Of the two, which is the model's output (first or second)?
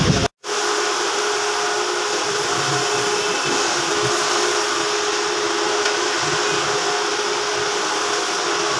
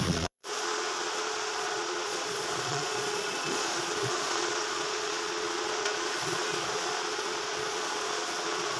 second